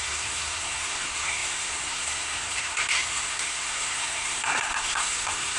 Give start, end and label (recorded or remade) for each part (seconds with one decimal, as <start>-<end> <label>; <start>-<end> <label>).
0.0-5.6 remade